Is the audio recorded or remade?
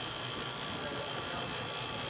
recorded